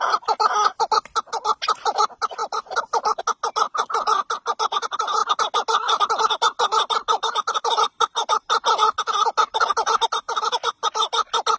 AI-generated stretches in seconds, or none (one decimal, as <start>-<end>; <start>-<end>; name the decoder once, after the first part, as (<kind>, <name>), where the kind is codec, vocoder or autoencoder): 2.4-3.2 (vocoder, BigVGAN v2)